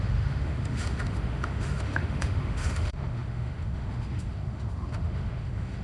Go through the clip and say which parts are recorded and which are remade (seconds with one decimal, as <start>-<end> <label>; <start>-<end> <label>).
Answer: 0.0-5.8 remade